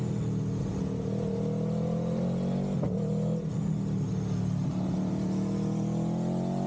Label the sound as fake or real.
real